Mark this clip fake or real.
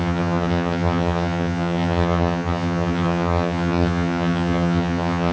fake